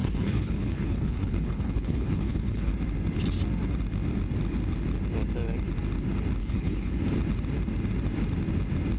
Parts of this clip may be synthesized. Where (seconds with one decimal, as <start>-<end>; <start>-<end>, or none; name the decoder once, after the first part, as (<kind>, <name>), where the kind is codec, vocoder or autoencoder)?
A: 0.0-2.7 (codec, HILCodec); 6.4-6.9